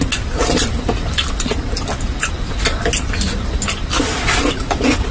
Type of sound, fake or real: real